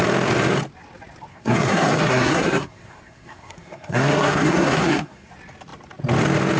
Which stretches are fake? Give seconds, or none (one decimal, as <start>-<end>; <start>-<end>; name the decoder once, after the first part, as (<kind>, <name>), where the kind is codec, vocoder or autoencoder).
1.3-5.3 (codec, SNAC)